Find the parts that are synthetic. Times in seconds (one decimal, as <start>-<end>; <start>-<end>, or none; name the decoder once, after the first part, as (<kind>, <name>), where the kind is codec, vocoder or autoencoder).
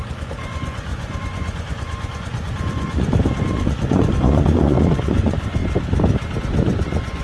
0.0-5.6 (vocoder, Vocos); 6.4-7.2